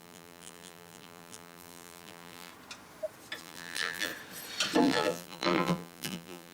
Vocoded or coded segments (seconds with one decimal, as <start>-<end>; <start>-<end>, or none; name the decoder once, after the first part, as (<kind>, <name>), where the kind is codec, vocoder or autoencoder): 0.0-2.5 (vocoder, BigVGAN v2); 3.4-4.1; 4.8-6.5